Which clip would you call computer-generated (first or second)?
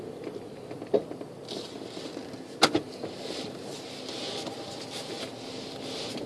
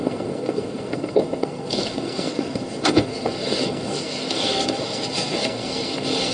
second